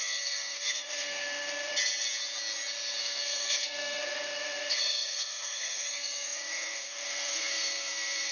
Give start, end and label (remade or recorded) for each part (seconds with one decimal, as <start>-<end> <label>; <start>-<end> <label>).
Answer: 0.0-1.7 remade; 1.7-3.0 recorded; 3.0-8.3 remade